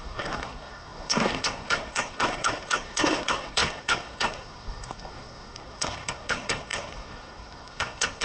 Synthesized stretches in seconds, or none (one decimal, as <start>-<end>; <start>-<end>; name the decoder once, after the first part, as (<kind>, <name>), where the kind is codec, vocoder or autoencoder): 0.0-8.2 (codec, SNAC)

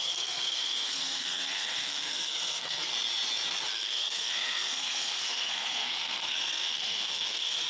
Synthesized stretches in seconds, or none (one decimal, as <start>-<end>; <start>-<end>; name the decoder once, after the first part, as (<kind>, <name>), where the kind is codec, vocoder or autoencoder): 0.0-2.9 (codec, SNAC); 3.7-7.7

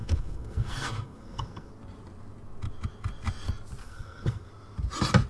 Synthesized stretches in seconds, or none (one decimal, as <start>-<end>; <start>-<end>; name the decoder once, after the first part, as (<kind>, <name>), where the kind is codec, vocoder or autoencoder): 0.0-1.7 (codec, SNAC); 3.8-4.5

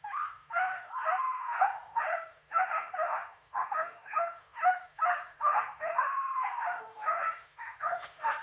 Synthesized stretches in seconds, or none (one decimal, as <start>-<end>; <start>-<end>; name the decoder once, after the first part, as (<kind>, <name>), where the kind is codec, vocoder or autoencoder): 0.0-8.4 (autoencoder, DAC-VAE)

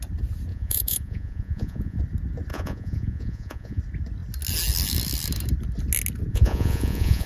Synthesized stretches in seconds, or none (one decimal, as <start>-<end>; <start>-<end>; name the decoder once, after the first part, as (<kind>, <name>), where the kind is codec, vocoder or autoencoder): 0.5-2.0 (vocoder, Vocos); 2.5-3.8; 6.3-7.3